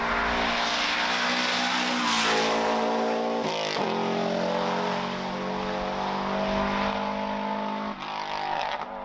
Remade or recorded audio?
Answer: recorded